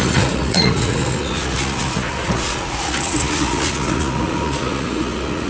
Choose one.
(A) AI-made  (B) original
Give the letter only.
A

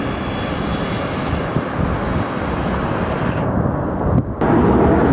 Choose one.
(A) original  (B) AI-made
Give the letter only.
A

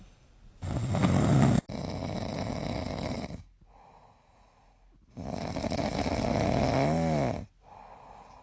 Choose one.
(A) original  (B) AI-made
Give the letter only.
A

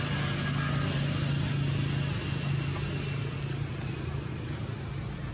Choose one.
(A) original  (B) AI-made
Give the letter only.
A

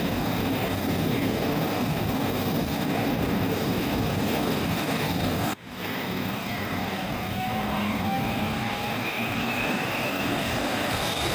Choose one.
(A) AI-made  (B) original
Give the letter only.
A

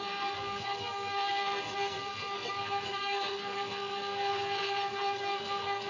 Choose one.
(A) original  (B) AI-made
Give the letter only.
B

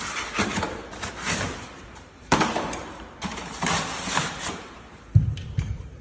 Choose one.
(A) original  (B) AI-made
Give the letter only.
B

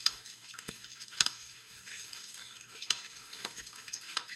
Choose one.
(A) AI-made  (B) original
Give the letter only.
A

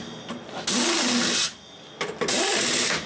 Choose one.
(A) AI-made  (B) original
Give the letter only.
B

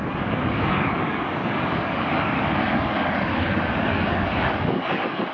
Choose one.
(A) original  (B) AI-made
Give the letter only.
B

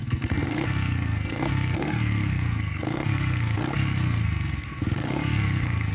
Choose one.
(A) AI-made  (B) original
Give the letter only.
A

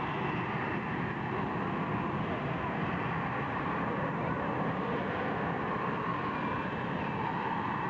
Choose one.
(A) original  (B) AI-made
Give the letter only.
A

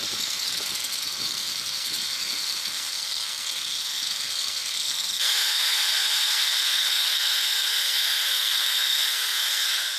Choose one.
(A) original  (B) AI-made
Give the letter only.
B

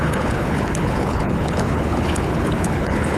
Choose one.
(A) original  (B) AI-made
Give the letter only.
B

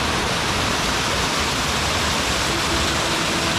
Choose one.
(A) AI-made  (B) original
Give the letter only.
A